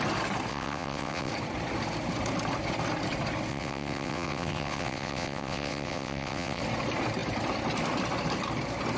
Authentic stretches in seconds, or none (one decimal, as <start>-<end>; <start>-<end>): 0.0-0.5; 1.3-3.5; 6.6-9.0